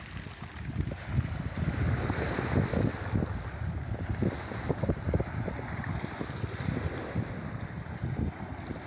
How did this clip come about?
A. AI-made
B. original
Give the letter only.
B